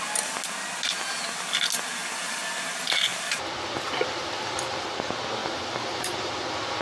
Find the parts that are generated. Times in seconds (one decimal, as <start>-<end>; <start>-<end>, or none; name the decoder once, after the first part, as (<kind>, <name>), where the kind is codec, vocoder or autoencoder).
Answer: 3.1-4.3 (vocoder, BigVGAN v2); 5.4-6.3